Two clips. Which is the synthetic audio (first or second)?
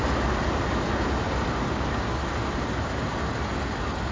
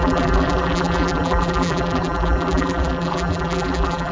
second